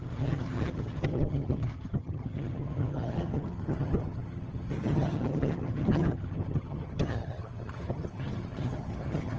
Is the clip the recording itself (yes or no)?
no